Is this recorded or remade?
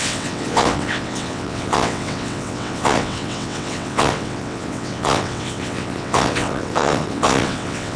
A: remade